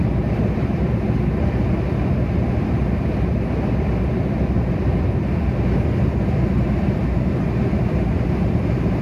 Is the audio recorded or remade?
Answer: recorded